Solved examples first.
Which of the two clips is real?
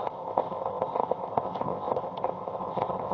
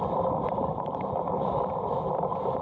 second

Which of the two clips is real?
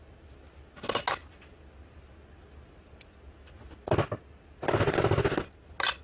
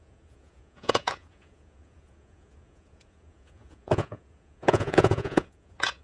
first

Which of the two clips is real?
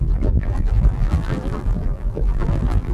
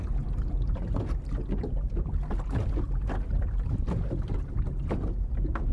second